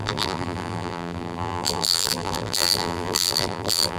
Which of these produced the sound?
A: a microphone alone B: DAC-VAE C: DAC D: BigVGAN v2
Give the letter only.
D